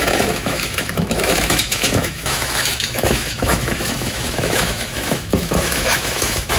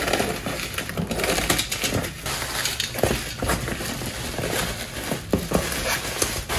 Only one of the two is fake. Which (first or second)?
first